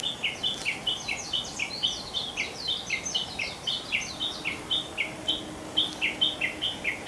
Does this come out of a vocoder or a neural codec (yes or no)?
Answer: no